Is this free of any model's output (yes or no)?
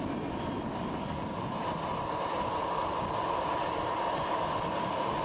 yes